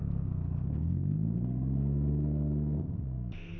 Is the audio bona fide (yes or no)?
no